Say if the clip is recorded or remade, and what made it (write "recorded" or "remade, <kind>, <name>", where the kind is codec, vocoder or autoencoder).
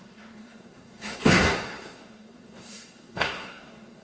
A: remade, codec, SNAC